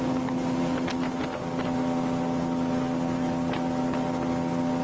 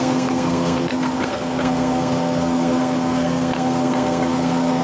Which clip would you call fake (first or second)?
second